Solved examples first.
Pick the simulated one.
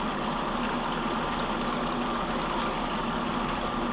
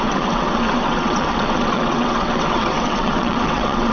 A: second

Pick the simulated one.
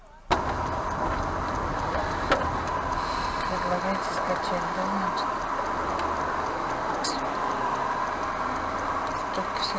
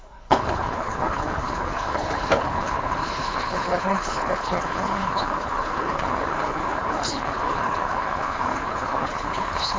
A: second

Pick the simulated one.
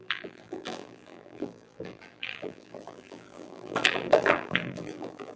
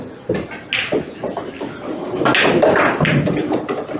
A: first